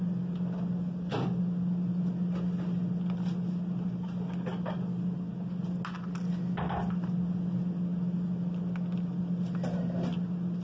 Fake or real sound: real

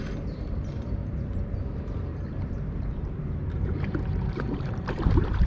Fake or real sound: fake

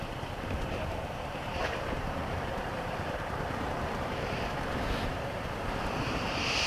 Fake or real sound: fake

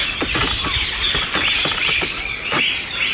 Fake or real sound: real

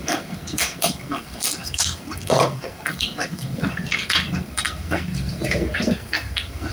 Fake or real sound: fake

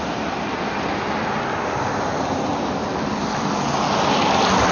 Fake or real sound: real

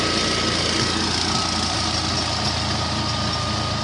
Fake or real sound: real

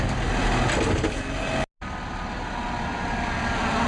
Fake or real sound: real